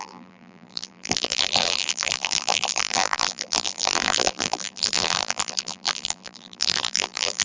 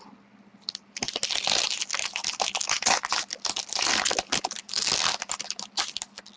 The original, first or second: second